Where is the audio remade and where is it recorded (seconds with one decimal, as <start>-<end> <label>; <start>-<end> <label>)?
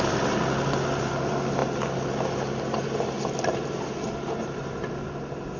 0.0-5.6 recorded